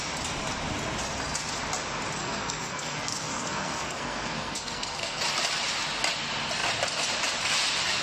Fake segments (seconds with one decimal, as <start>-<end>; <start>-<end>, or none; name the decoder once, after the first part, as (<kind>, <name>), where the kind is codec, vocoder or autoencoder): 2.2-5.2 (codec, SNAC)